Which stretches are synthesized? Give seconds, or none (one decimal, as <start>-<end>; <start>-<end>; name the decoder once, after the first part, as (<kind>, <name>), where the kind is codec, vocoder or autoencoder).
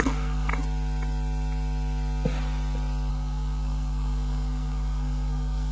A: 0.0-0.5 (codec, SNAC); 3.1-5.7